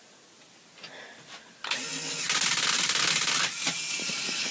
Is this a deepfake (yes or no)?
no